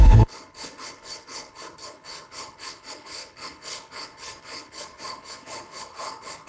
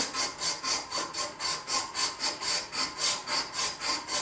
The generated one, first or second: first